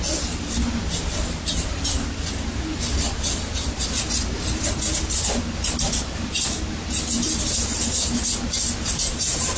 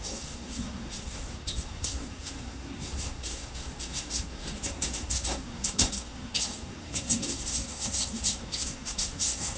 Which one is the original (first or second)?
first